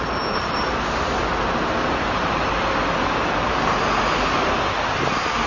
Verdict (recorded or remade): recorded